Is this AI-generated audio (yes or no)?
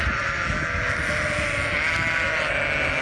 no